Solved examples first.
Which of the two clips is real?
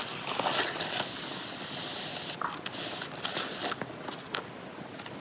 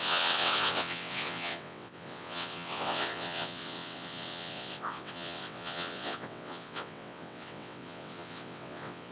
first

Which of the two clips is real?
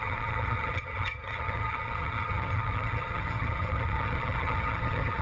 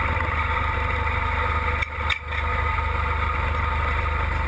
second